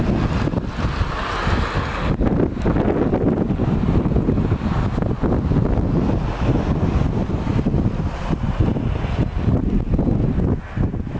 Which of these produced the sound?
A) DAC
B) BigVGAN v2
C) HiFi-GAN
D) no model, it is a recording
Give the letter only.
D